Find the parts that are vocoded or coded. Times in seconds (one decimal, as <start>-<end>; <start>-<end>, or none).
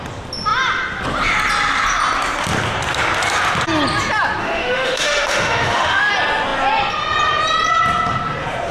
4.4-6.1